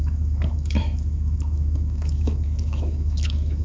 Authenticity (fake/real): fake